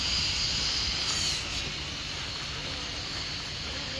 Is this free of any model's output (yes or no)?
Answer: yes